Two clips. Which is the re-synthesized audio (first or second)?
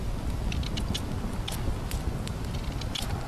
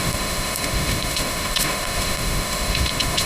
second